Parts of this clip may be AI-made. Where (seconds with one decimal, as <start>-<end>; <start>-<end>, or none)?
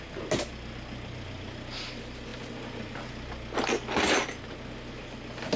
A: none